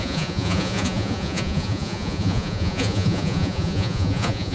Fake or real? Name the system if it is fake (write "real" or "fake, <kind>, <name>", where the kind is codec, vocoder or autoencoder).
fake, vocoder, Vocos